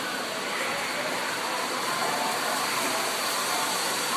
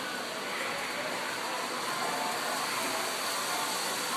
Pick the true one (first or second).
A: second